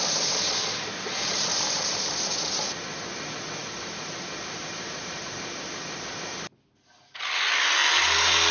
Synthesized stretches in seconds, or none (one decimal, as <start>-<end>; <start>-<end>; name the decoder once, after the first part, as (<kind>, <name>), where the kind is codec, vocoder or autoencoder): 1.1-2.1 (vocoder, BigVGAN v2); 3.6-6.1